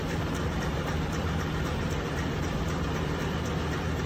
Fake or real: fake